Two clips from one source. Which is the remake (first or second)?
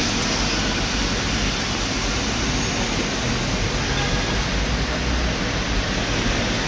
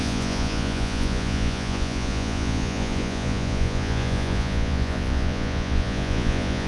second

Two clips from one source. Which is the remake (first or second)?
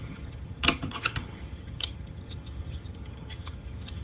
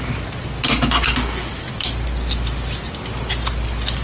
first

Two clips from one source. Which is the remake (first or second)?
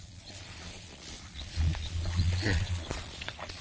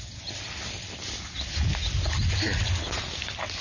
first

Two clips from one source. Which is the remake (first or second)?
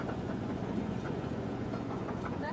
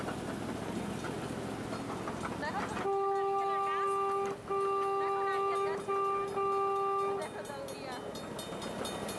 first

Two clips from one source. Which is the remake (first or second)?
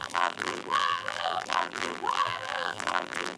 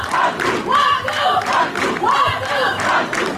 first